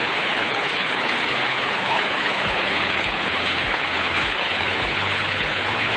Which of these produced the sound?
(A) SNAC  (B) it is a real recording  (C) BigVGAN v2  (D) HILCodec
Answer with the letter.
D